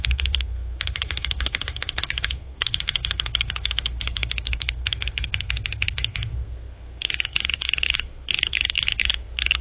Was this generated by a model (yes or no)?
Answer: yes